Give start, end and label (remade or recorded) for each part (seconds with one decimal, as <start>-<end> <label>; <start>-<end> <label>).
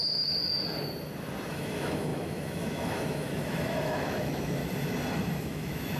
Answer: 0.0-0.4 remade; 0.4-1.5 recorded; 1.5-4.6 remade; 4.6-5.4 recorded; 5.4-6.0 remade